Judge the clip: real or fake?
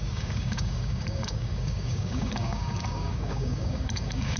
fake